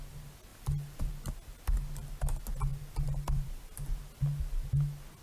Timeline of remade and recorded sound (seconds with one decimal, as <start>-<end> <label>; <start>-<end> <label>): 0.0-0.5 recorded; 0.5-1.1 remade; 1.1-2.7 recorded; 2.7-3.9 remade; 3.9-5.2 recorded